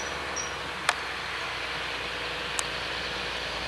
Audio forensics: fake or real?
real